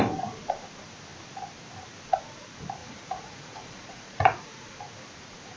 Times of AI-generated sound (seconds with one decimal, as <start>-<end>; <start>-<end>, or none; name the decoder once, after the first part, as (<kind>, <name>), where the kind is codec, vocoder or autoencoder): 2.8-4.8 (vocoder, Vocos)

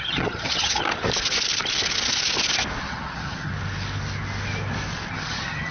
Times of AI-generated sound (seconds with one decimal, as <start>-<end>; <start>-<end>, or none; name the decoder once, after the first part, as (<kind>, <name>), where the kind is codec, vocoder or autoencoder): 0.0-0.8 (vocoder, HiFi-GAN); 2.8-3.5; 5.1-5.7

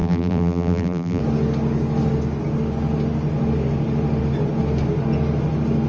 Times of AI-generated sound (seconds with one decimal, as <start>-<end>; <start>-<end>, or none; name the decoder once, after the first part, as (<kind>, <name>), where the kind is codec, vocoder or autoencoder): 0.0-1.2 (vocoder, BigVGAN v2)

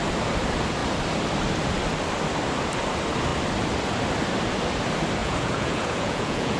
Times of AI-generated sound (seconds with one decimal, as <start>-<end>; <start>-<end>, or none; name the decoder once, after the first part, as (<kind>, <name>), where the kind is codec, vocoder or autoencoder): 5.2-6.6 (vocoder, Vocos)